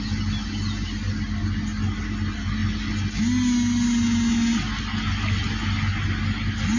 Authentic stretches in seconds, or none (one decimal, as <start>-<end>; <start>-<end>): 0.0-6.8

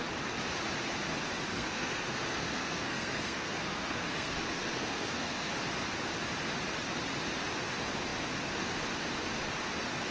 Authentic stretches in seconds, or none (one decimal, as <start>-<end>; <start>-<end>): 0.0-1.5; 5.5-10.1

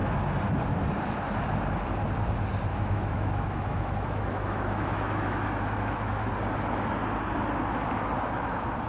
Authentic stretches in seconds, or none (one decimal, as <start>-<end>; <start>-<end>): 0.0-2.7; 6.3-8.9

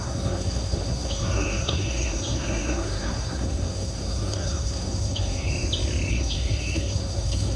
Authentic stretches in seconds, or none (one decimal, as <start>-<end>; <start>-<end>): 5.5-6.1